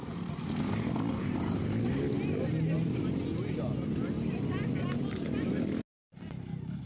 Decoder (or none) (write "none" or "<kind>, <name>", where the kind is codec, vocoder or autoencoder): none